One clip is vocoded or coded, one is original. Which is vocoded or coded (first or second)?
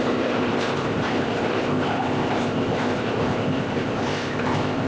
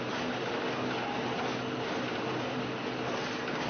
first